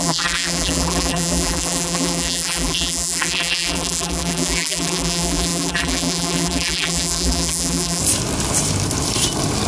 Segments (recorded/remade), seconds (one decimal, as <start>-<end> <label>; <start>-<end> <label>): 0.0-8.0 remade; 8.0-9.7 recorded